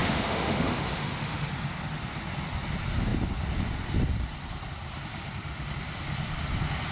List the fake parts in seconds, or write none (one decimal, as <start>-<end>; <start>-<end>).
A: 0.0-1.5